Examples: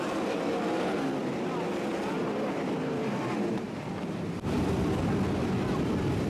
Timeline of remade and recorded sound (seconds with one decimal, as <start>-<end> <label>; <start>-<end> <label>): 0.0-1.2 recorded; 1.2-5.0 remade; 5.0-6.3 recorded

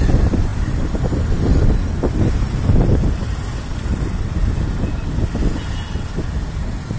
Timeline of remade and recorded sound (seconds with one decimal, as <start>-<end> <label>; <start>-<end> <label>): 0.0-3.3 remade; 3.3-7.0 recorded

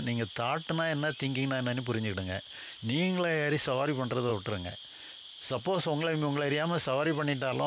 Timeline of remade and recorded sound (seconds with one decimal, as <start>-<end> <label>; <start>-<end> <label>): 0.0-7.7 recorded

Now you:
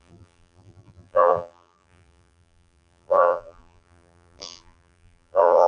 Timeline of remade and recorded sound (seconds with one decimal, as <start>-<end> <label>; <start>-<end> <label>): 0.0-5.7 remade

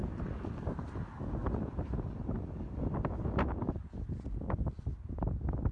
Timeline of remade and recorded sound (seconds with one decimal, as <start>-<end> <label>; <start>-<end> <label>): 0.0-0.7 remade; 0.7-1.4 recorded; 1.4-3.7 remade; 3.7-5.7 recorded